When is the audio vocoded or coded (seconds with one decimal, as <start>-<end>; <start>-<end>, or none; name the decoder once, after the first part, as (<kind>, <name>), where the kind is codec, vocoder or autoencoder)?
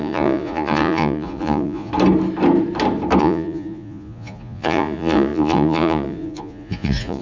0.0-1.9 (vocoder, Vocos); 3.2-7.2